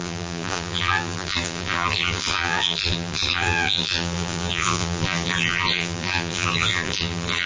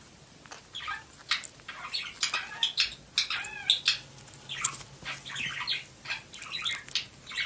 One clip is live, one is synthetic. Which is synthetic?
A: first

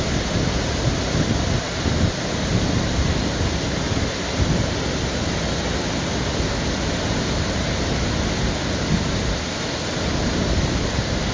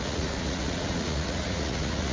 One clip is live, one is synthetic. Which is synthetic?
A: second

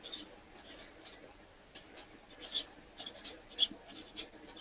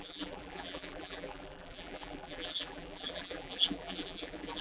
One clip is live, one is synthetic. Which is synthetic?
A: second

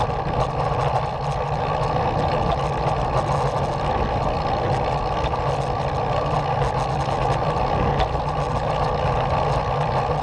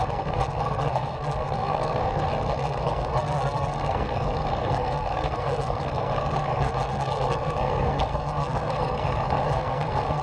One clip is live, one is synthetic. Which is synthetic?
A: second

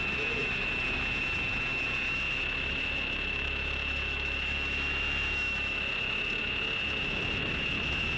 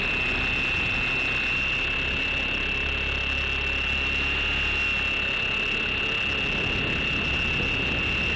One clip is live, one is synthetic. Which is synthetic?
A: first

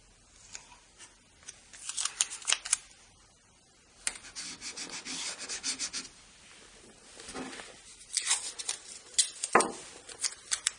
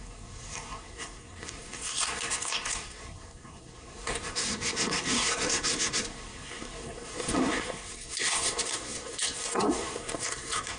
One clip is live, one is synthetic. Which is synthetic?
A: second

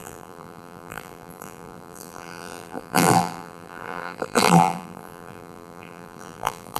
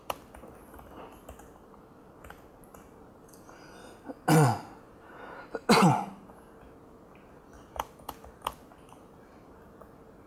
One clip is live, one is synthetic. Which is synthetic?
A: first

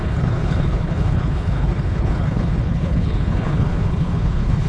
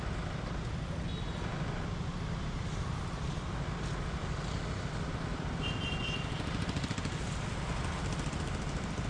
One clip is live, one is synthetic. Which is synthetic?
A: first